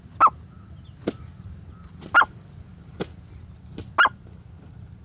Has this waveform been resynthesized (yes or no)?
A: no